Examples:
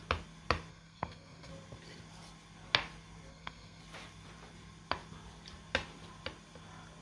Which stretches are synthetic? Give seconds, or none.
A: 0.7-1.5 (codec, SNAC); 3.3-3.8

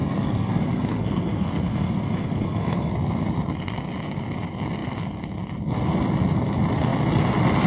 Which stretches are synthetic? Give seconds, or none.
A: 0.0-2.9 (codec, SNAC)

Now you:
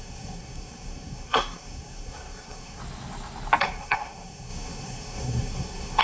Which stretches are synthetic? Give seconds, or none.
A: 0.0-2.8 (codec, SNAC); 3.6-6.0